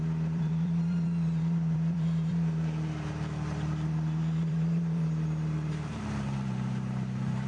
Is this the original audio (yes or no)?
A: no